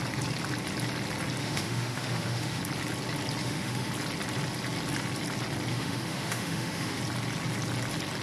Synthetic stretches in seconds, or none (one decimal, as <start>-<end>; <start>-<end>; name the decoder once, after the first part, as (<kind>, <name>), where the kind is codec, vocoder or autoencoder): 1.4-2.6 (autoencoder, DAC-VAE); 3.4-3.9; 5.7-7.0